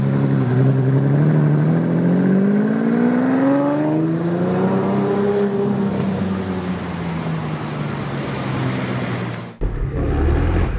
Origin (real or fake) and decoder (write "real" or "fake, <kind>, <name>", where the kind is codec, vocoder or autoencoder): real